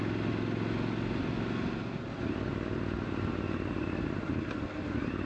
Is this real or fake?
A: real